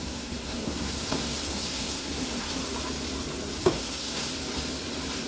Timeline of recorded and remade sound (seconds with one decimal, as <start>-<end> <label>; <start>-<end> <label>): 0.0-2.6 remade; 2.6-3.6 recorded; 3.6-4.3 remade; 4.3-5.3 recorded